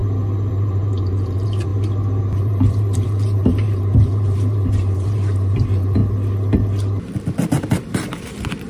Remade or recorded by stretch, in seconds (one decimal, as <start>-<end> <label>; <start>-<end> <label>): 0.0-0.5 recorded; 0.5-1.7 remade; 1.7-2.2 recorded; 2.2-6.0 remade; 6.0-7.5 recorded; 7.5-8.7 remade

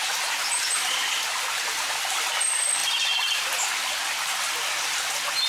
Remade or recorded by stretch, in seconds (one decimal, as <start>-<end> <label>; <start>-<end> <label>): 0.0-2.8 recorded; 2.8-3.4 remade; 3.4-5.5 recorded

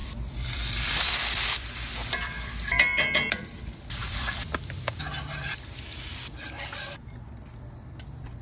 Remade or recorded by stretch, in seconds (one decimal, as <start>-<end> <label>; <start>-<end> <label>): 0.0-5.0 remade; 5.0-8.4 recorded